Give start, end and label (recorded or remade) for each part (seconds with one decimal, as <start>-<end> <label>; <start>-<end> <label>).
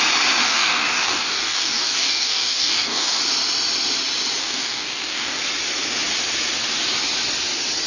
0.0-0.4 recorded; 0.4-3.2 remade; 3.2-4.4 recorded; 4.4-5.4 remade; 5.4-7.9 recorded